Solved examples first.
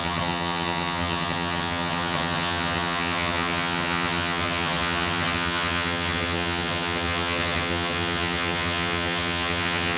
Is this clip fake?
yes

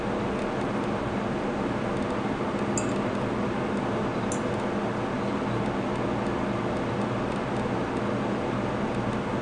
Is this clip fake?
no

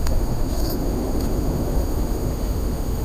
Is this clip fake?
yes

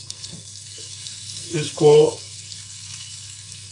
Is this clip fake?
yes